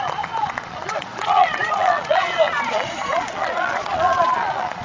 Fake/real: fake